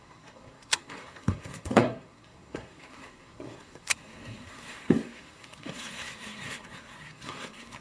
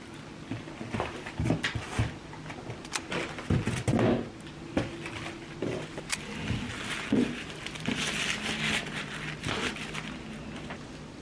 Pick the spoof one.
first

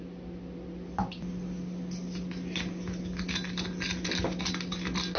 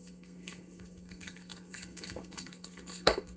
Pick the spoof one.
second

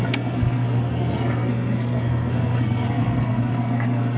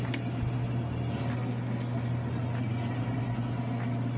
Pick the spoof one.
first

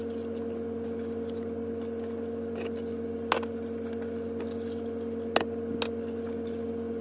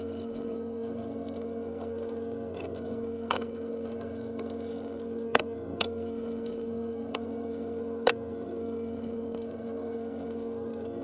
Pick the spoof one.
second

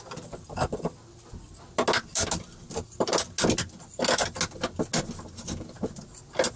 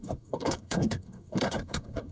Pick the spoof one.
second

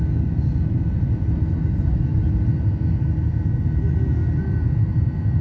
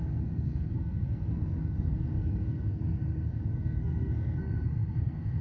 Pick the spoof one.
second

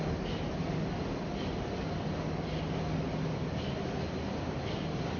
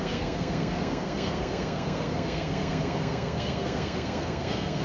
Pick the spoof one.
second